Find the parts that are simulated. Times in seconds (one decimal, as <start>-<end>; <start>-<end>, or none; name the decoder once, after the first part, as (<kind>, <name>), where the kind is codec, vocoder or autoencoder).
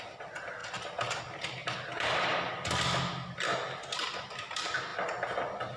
none